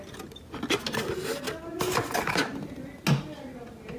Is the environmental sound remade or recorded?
recorded